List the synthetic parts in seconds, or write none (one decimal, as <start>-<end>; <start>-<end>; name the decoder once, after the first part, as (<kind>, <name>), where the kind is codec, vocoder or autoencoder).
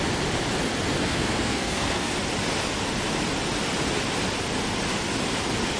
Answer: 1.0-2.1 (codec, SNAC)